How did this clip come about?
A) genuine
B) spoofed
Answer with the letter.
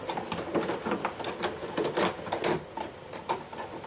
A